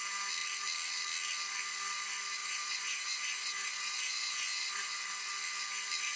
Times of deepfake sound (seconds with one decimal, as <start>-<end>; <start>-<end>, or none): 2.4-5.3